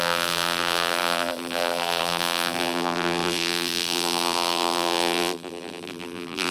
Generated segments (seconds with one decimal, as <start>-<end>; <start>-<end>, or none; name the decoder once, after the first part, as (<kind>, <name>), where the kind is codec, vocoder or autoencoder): 0.0-6.5 (vocoder, BigVGAN v2)